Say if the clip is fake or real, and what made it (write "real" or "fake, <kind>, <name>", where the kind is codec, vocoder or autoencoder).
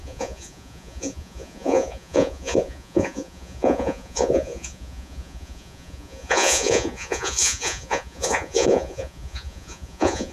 fake, vocoder, Vocos